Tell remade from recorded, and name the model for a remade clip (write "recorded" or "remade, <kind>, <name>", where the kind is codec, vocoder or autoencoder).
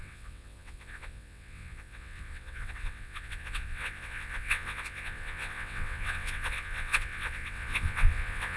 remade, vocoder, WaveNeXt